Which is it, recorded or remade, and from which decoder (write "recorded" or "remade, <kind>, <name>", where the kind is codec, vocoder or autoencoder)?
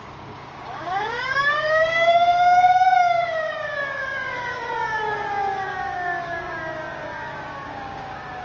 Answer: remade, codec, DAC